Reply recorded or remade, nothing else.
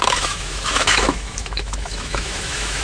remade